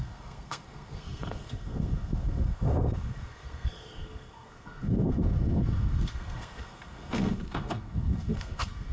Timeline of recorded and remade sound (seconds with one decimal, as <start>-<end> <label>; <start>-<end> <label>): 0.0-8.9 remade